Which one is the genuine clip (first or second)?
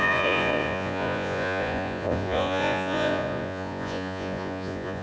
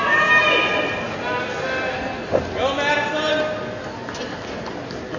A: second